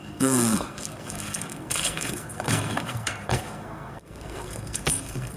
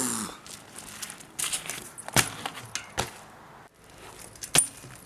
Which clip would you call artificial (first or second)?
first